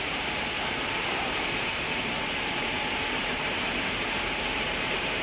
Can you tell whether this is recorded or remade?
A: remade